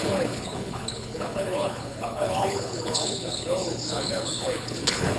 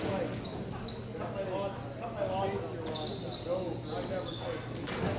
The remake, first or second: first